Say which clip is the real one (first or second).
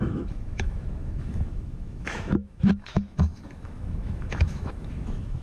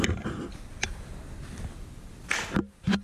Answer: second